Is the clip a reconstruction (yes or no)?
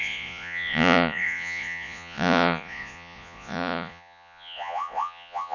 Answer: yes